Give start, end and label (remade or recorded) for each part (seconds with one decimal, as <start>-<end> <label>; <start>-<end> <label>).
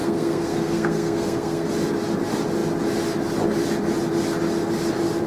0.0-1.7 remade; 1.7-5.3 recorded